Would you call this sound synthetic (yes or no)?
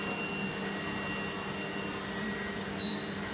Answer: no